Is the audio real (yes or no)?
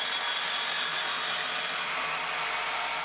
yes